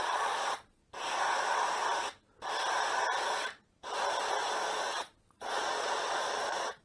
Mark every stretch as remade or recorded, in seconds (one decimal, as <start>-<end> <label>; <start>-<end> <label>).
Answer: 0.0-0.8 remade; 0.8-4.9 recorded; 4.9-6.8 remade